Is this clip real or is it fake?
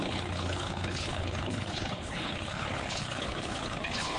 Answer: fake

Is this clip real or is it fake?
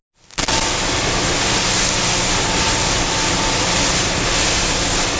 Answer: real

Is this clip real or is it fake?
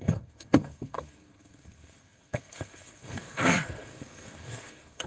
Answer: fake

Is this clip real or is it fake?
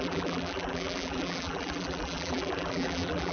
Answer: fake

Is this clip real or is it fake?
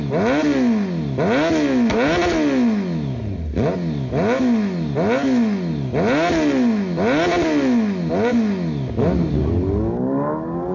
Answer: real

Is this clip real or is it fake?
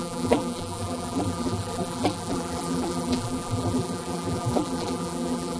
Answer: fake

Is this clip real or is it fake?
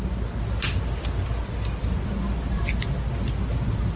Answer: real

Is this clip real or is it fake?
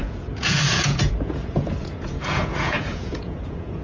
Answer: fake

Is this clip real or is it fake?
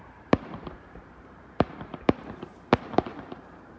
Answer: fake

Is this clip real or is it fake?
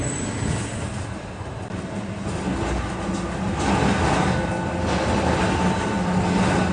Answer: real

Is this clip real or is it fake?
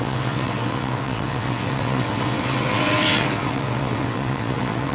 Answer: fake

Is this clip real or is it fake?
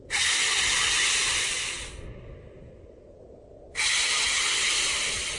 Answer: real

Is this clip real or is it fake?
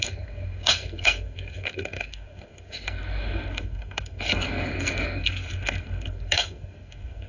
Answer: fake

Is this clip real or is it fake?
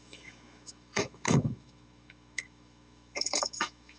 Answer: fake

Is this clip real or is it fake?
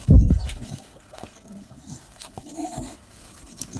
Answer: fake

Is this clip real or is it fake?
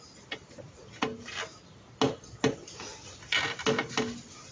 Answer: real